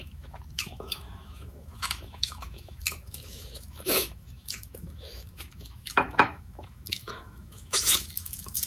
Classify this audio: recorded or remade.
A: remade